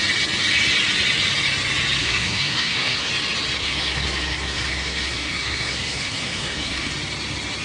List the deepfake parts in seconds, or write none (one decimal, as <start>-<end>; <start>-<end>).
2.0-3.1; 3.6-6.9